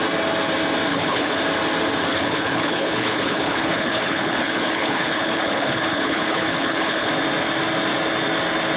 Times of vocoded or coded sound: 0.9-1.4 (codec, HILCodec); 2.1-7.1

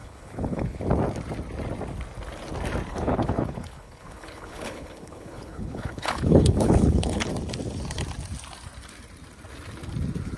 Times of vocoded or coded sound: 0.0-0.8 (codec, HILCodec); 2.9-7.3

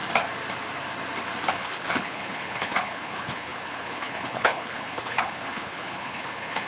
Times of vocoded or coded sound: 1.5-6.7 (codec, HILCodec)

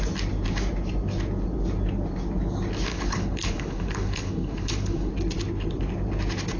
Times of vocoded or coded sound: 2.9-5.1 (codec, HILCodec)

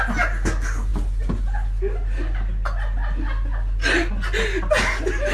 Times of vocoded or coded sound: none